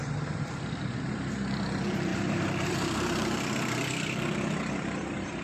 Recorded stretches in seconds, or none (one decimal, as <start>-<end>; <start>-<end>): 1.3-2.1